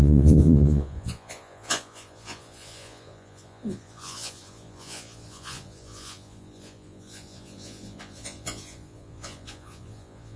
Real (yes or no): no